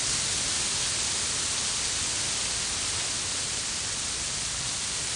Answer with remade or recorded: recorded